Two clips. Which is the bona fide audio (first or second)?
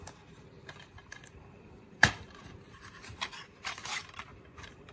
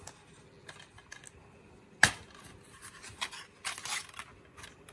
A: second